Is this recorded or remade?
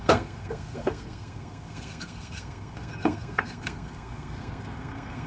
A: remade